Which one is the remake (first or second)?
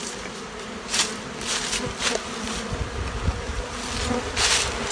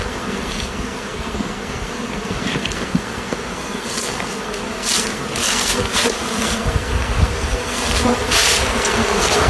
second